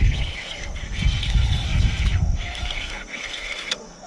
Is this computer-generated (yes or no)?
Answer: yes